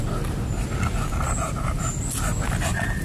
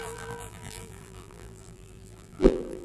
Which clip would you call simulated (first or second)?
second